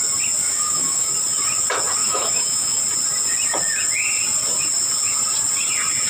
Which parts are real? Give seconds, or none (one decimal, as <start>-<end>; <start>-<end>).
0.0-0.4; 1.1-2.0; 2.8-6.1